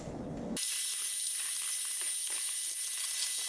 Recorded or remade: recorded